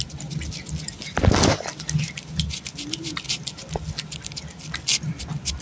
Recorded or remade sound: recorded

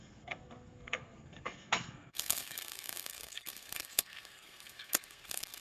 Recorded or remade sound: remade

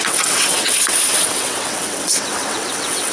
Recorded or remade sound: remade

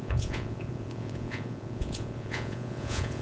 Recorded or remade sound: remade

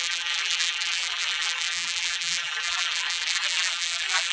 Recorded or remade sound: remade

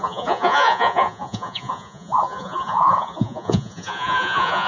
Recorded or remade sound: remade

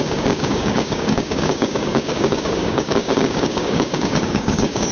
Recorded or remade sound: remade